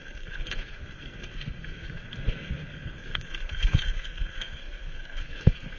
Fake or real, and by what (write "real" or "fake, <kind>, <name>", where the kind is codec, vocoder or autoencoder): fake, codec, SNAC